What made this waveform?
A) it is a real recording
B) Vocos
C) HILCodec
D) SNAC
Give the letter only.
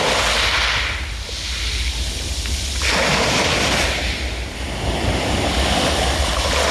A